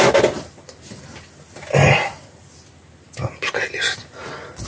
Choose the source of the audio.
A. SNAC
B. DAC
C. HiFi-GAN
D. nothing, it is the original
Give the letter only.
D